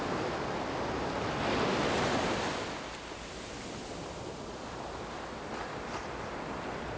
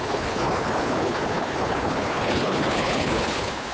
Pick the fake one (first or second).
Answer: second